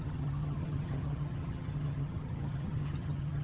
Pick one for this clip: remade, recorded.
remade